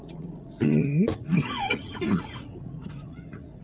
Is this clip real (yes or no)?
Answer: no